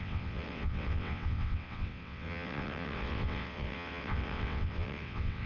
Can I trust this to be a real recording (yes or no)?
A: no